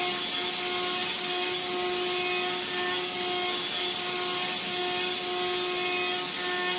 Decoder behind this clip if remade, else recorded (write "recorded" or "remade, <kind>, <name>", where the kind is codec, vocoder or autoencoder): recorded